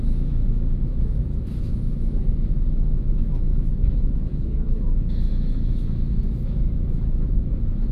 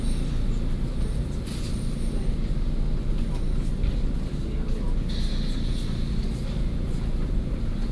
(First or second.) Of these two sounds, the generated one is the first